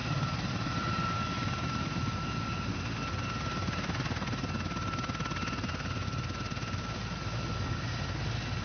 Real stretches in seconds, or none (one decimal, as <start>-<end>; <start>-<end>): 2.3-8.6